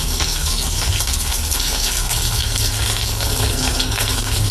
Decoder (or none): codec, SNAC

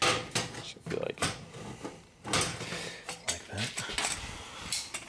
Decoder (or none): none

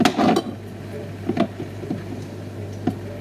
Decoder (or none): none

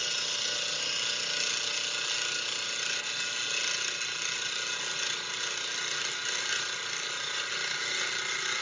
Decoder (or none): none